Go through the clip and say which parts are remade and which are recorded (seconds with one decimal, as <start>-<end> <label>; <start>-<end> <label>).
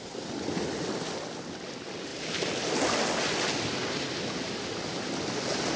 0.0-5.8 recorded